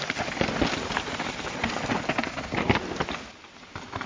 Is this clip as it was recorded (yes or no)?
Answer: yes